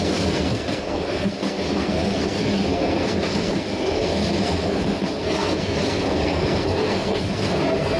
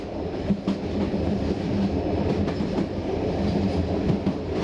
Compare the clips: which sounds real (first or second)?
second